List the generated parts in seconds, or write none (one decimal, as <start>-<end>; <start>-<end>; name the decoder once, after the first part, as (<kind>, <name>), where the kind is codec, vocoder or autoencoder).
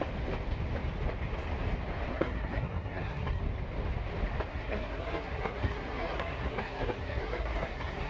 2.1-3.4 (codec, SNAC); 4.5-8.1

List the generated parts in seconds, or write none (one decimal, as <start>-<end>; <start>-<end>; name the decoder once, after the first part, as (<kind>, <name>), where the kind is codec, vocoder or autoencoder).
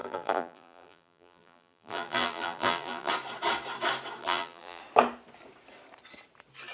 0.0-3.1 (vocoder, BigVGAN v2); 4.2-4.8